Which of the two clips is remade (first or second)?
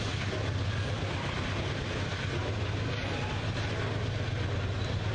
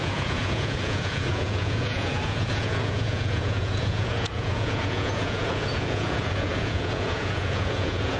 second